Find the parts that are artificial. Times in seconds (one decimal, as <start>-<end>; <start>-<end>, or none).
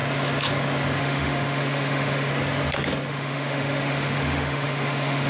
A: 1.0-2.3; 3.1-5.3